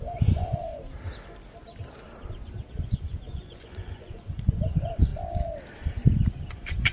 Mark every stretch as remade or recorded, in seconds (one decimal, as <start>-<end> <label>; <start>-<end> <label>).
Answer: 0.0-0.7 remade; 0.7-2.7 recorded; 2.7-5.1 remade; 5.1-6.5 recorded; 6.5-6.9 remade